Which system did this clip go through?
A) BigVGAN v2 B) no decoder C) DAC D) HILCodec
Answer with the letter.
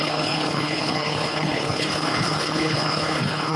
D